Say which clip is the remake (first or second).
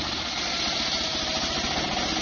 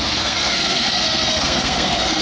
second